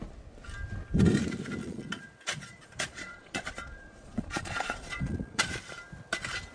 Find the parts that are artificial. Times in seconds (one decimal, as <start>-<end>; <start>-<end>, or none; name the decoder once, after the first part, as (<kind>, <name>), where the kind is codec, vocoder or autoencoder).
1.6-5.5 (vocoder, Vocos)